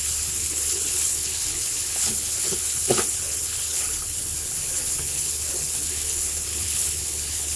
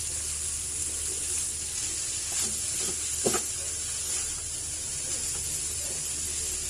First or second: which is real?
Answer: second